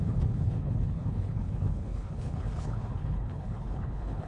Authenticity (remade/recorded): remade